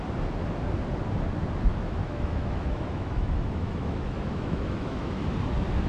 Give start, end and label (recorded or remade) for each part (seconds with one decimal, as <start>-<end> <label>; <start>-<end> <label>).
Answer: 0.0-1.7 recorded; 1.7-5.2 remade; 5.2-5.9 recorded